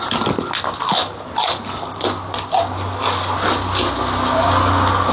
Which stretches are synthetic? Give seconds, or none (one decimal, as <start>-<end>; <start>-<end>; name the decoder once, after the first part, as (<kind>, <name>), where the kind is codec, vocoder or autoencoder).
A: none